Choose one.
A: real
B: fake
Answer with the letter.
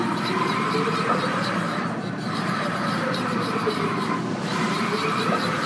B